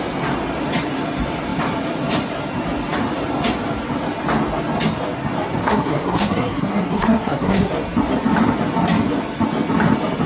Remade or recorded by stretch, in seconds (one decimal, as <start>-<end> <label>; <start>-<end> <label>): 0.0-5.6 recorded; 5.6-7.7 remade; 7.7-10.3 recorded